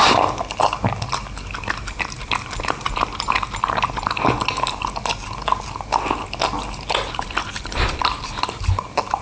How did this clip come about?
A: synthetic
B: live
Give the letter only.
B